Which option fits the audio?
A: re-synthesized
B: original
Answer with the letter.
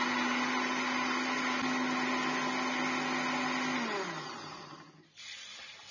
B